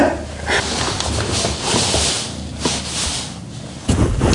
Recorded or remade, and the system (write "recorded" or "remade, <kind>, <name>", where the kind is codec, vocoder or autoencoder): recorded